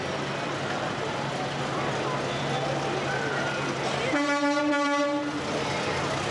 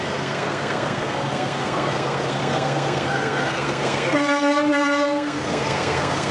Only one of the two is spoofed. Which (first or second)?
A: second